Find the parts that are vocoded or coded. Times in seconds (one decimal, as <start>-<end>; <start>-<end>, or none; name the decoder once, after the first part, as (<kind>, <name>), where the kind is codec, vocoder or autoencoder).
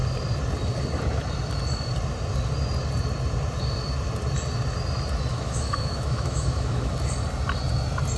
5.3-6.9 (autoencoder, DAC-VAE)